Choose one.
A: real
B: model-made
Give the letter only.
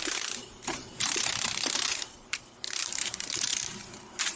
B